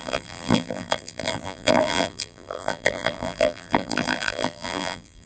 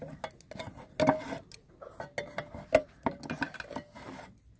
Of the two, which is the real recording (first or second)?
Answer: second